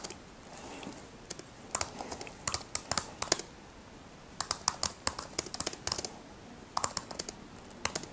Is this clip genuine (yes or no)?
yes